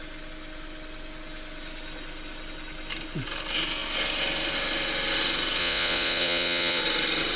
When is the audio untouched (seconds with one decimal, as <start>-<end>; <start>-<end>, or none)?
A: 0.0-5.6; 6.8-7.4

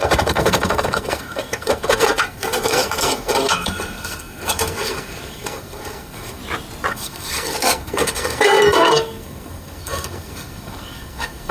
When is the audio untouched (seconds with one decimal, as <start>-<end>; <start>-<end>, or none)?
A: 6.4-6.9

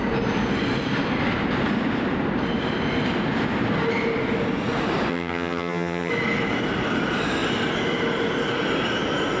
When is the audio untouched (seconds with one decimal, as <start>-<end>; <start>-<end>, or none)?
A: 0.0-5.1; 6.1-9.4

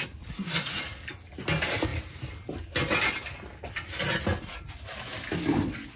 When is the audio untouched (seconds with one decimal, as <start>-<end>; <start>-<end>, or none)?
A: 0.0-6.0

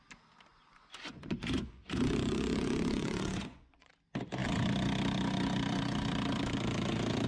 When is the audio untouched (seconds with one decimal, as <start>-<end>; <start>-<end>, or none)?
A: 0.0-0.5; 3.9-7.3